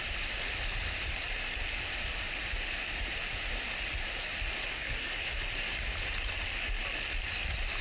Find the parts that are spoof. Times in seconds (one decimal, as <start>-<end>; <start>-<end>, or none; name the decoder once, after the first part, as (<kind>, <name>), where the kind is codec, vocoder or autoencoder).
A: 4.7-5.3 (codec, SNAC)